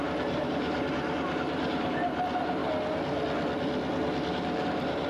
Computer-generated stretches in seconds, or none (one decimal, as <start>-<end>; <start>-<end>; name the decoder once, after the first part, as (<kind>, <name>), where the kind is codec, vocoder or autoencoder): 0.0-2.6 (vocoder, BigVGAN v2); 4.3-5.1